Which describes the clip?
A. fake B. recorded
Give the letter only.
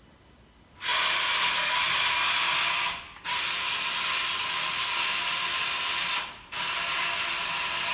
B